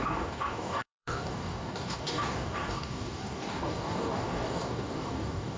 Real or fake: fake